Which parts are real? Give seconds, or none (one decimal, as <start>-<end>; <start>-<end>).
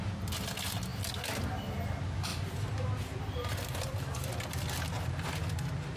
0.0-2.3; 4.3-6.0